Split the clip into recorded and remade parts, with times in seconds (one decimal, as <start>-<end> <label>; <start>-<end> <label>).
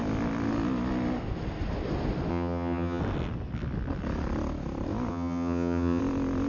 0.0-2.3 recorded; 2.3-3.0 remade; 3.0-5.1 recorded; 5.1-6.0 remade; 6.0-6.5 recorded